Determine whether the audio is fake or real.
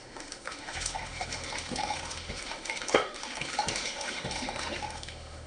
fake